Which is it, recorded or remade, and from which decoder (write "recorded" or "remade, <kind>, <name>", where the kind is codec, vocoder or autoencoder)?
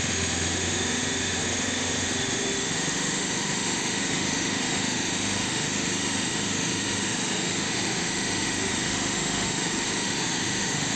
remade, autoencoder, DAC-VAE